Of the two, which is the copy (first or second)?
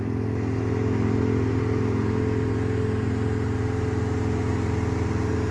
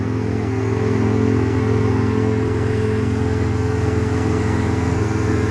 second